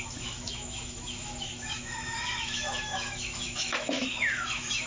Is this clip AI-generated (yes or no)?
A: yes